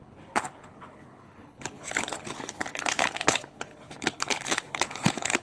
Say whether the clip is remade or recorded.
remade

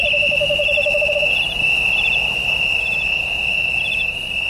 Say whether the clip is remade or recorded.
recorded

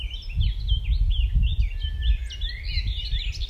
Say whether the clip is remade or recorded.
recorded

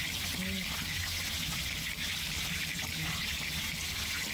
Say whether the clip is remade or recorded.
recorded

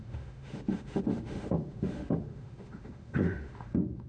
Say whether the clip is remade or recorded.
remade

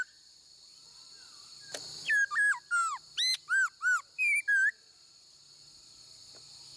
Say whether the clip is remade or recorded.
recorded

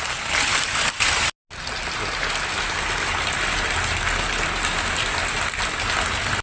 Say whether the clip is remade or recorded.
recorded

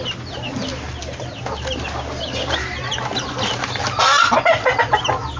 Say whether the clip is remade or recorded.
recorded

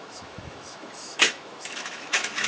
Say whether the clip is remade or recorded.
remade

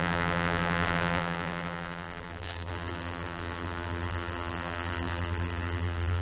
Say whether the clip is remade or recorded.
remade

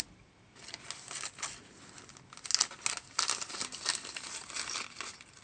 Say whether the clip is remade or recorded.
recorded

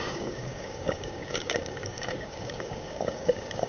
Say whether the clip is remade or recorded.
remade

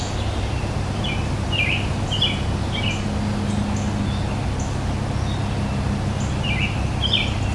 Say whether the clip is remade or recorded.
recorded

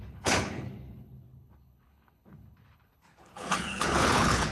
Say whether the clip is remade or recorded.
remade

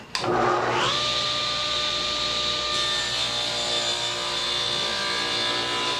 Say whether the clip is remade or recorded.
recorded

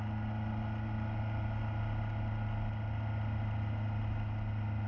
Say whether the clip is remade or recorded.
recorded